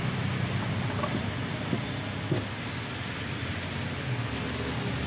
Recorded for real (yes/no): yes